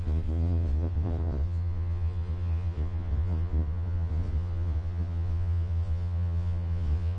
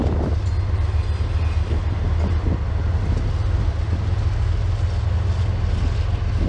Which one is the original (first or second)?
second